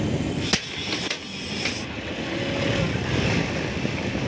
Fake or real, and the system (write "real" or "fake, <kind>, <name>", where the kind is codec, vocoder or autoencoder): real